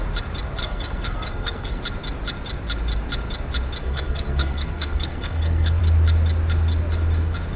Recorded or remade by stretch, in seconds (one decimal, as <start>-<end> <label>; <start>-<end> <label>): 0.0-0.6 recorded; 0.6-1.8 remade; 1.8-3.8 recorded; 3.8-5.8 remade; 5.8-7.6 recorded